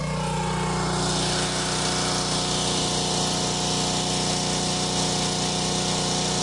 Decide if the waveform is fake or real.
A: real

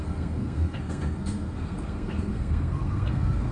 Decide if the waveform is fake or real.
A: fake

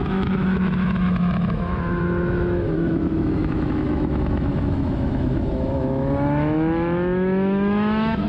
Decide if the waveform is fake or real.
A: fake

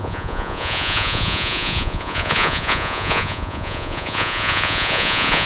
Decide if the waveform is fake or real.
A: fake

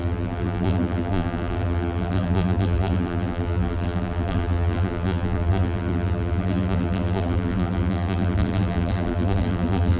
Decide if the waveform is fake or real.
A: fake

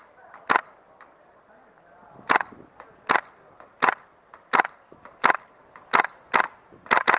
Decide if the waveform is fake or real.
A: real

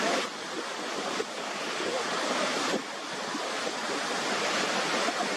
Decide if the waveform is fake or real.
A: real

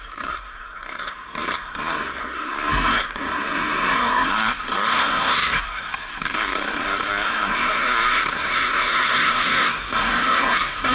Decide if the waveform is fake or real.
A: fake